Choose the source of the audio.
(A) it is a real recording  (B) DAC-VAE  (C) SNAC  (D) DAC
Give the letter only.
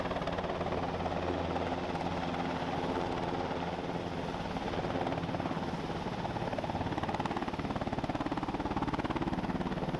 A